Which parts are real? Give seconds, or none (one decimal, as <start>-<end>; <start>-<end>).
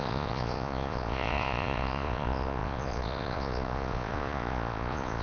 none